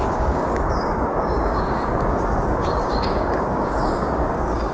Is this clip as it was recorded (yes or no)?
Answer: no